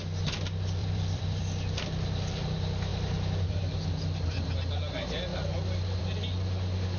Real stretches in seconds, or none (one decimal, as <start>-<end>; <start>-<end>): 0.0-0.8; 1.4-7.0